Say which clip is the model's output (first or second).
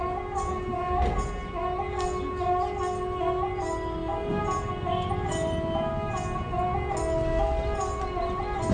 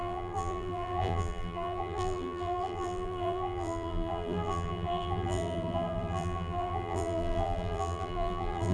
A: second